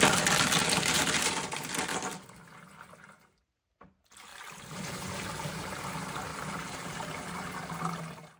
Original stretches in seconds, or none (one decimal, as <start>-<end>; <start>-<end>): 0.0-0.6; 1.1-4.3; 5.1-6.3; 7.1-8.4